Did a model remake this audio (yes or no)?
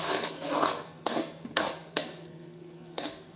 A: yes